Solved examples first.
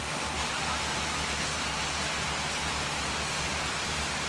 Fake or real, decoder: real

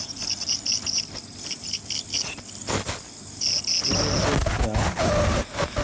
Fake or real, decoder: real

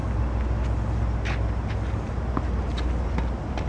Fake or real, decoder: real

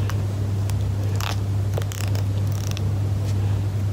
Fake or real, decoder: real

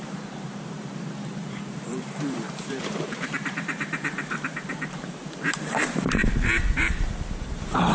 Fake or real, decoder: fake, vocoder, BigVGAN v2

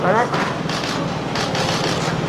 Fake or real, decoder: real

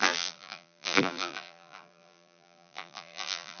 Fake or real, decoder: fake, vocoder, BigVGAN v2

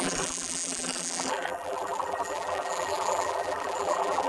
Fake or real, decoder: fake, vocoder, BigVGAN v2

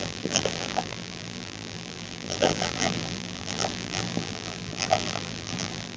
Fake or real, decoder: fake, vocoder, BigVGAN v2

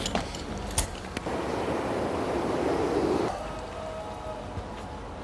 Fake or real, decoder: real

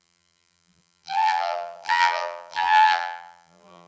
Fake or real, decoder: fake, vocoder, BigVGAN v2